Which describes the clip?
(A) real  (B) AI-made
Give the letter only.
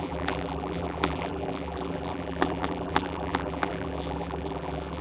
B